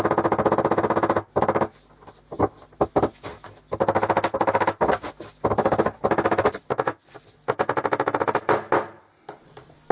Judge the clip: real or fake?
real